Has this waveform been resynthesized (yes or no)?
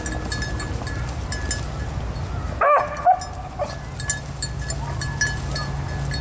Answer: no